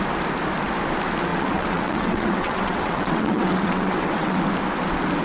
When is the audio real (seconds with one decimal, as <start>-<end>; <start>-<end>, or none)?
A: 0.0-1.3; 4.4-5.2

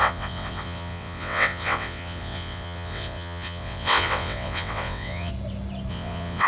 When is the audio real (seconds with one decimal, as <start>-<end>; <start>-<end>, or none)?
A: 5.3-5.9